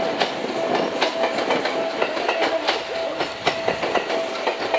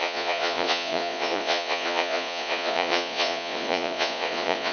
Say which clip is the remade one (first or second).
second